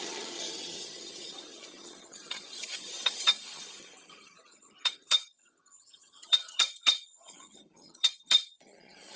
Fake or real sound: fake